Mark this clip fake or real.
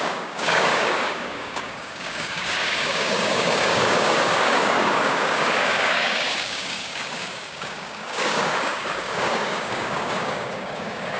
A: fake